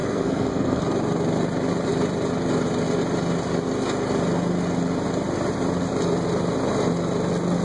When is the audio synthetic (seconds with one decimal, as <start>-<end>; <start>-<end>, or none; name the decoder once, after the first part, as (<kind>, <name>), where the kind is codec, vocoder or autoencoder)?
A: 0.0-0.8 (codec, SNAC)